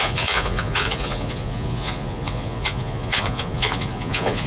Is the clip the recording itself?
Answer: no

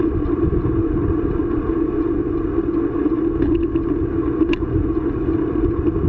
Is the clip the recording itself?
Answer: yes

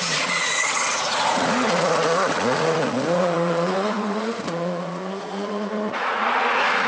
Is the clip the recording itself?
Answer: no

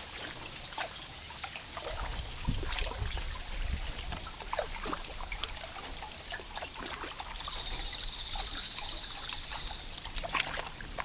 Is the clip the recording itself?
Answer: yes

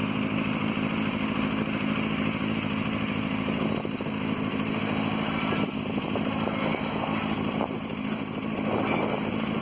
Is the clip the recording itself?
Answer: yes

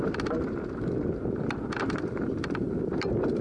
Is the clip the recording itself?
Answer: yes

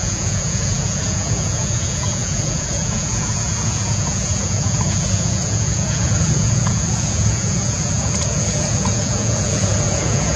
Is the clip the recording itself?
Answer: no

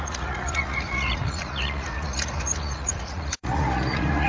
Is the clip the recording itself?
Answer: no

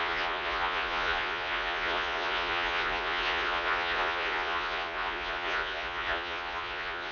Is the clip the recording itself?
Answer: no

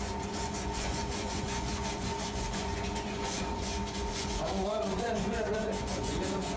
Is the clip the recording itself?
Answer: no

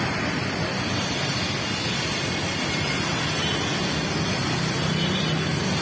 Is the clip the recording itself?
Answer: yes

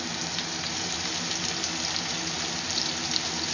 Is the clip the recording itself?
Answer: yes